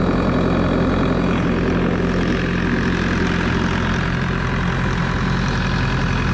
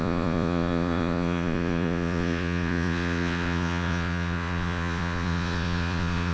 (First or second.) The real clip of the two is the first